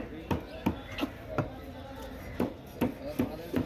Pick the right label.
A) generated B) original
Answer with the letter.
B